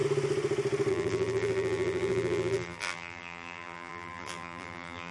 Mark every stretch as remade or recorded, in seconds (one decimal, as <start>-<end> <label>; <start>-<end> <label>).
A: 0.0-0.9 recorded; 0.9-5.1 remade